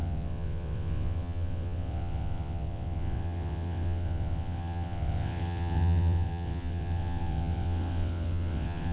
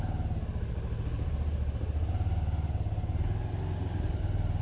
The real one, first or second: second